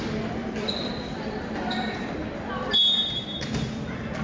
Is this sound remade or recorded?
remade